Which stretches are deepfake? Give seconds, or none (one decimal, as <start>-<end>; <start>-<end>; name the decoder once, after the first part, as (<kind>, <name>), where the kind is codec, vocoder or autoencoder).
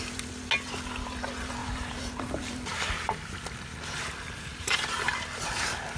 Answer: 1.6-2.5 (vocoder, BigVGAN v2); 4.5-5.1